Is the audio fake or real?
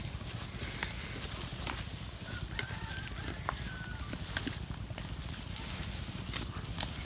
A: real